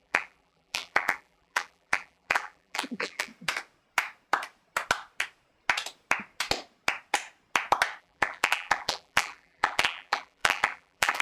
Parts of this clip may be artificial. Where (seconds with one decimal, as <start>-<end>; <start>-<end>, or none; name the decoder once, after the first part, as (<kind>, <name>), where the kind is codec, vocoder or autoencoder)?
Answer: 0.0-3.3 (vocoder, BigVGAN v2); 8.0-11.2